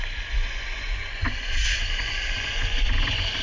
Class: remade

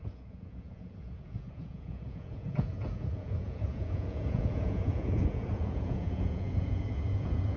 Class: remade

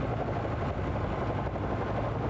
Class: recorded